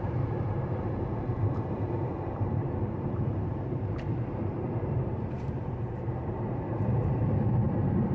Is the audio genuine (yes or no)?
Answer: no